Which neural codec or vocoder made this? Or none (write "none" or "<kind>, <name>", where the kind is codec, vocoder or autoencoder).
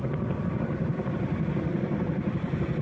none